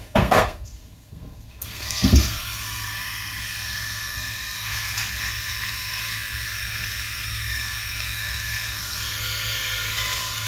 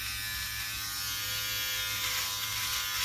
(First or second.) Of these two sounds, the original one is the second